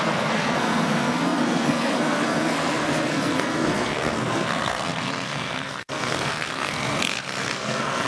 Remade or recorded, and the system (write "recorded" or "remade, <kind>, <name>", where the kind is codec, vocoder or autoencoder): remade, codec, SNAC